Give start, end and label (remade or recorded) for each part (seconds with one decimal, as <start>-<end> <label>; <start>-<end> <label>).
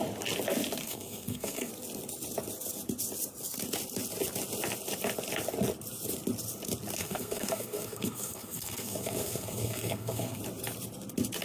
0.0-0.8 recorded; 0.8-1.7 remade; 1.7-7.0 recorded; 7.0-10.4 remade; 10.4-11.4 recorded